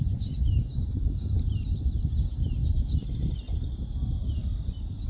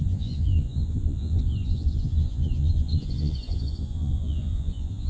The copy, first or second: second